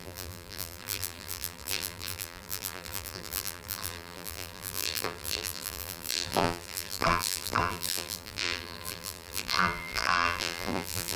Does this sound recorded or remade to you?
remade